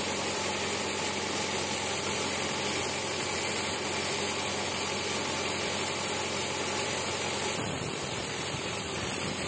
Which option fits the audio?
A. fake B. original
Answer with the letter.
B